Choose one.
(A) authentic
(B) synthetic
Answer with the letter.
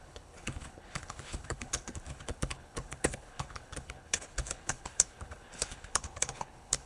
B